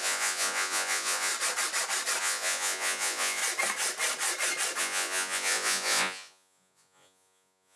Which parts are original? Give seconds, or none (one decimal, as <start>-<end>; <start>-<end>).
1.3-2.2; 3.4-4.8